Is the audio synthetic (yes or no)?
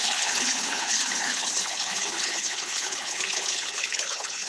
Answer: yes